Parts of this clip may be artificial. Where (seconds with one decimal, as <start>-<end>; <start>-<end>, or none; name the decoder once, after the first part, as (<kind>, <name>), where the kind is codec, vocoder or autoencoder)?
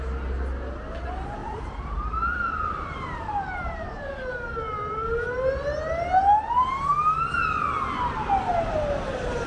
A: 1.4-4.2 (vocoder, BigVGAN v2)